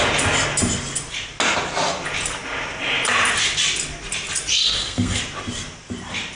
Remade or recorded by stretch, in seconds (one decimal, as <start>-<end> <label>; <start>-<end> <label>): 0.0-4.5 recorded; 4.5-5.2 remade; 5.2-6.4 recorded